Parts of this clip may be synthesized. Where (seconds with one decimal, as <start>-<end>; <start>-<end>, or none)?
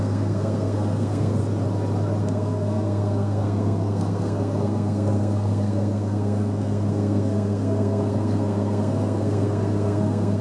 0.0-1.4; 2.2-10.4